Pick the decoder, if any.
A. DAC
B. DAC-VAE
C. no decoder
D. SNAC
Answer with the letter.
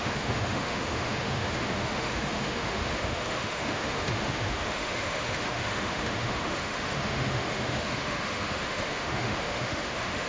B